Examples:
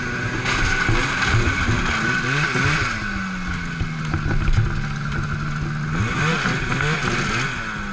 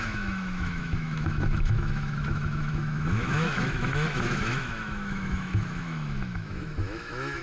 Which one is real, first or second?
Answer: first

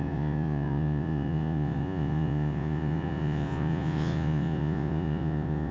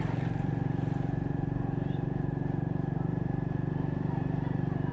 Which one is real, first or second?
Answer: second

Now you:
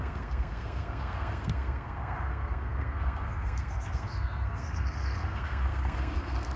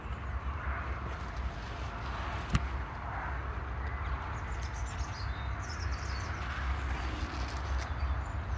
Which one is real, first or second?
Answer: second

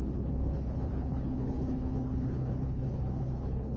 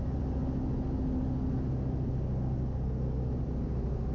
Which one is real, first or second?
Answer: second